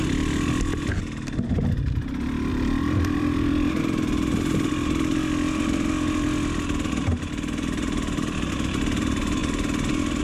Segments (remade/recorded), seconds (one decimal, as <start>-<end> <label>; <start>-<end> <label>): 0.0-2.5 recorded; 2.5-3.8 remade; 3.8-10.2 recorded